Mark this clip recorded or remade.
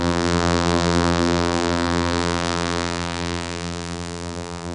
remade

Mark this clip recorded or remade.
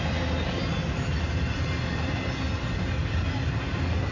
recorded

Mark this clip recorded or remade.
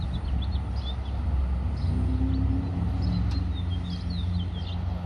recorded